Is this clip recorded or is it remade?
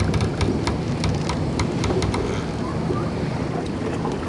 recorded